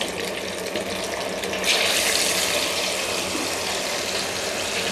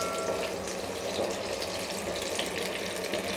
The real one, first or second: second